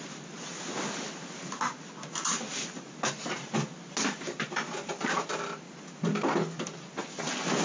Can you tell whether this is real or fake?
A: real